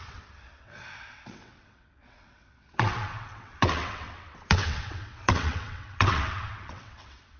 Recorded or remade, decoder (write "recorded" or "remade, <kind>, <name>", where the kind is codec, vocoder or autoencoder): remade, vocoder, WaveNeXt